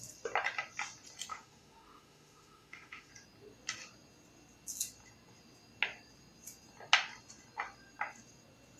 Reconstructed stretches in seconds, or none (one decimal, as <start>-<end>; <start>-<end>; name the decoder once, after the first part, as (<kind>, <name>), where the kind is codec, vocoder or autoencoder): 1.3-3.1 (autoencoder, DAC-VAE)